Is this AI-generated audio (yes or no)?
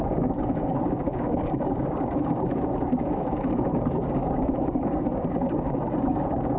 yes